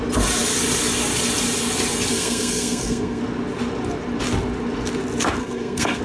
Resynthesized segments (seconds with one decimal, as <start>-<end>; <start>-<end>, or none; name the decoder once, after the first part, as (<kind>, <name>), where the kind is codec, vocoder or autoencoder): 2.1-3.2 (codec, SNAC); 5.4-6.0